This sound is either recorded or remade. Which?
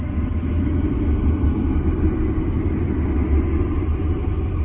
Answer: recorded